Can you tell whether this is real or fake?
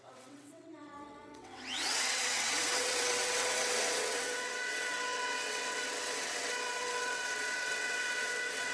fake